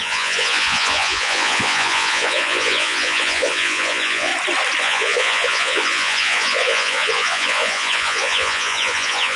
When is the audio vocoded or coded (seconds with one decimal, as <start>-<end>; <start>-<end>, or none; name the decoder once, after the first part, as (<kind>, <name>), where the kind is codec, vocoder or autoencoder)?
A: 0.0-4.3 (vocoder, Vocos); 4.8-9.4